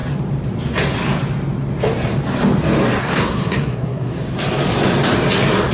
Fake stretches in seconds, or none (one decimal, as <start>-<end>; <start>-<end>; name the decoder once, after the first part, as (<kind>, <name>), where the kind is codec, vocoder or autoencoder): 3.0-4.2 (codec, SNAC)